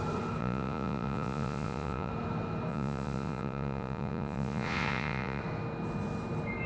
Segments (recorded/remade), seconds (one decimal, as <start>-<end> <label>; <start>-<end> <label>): 0.0-0.4 recorded; 0.4-2.1 remade; 2.1-2.7 recorded; 2.7-5.4 remade; 5.4-6.7 recorded